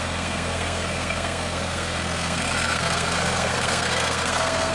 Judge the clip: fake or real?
fake